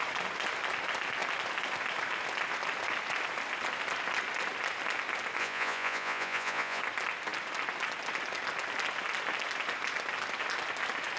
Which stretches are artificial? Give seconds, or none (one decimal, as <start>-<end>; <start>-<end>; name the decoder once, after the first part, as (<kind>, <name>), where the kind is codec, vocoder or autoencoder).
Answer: 5.4-6.8 (vocoder, Vocos)